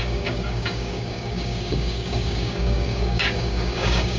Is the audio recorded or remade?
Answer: remade